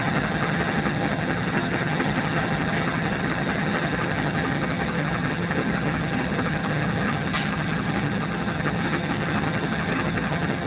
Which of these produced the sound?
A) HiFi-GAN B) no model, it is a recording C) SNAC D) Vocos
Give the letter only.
A